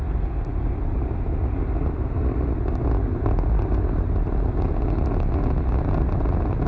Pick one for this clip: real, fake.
real